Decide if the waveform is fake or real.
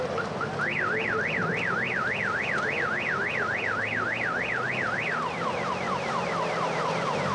real